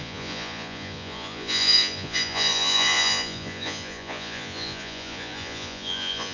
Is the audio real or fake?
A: fake